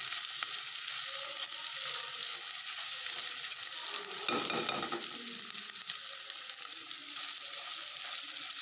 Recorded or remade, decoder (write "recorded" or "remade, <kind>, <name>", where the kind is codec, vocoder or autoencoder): recorded